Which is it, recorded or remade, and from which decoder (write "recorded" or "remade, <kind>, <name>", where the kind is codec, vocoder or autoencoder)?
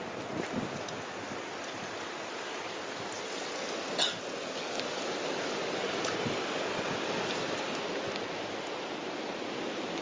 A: recorded